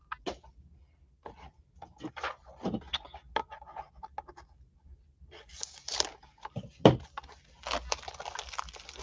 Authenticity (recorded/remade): recorded